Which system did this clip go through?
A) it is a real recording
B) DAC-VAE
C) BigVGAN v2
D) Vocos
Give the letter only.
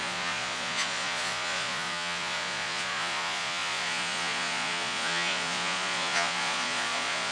D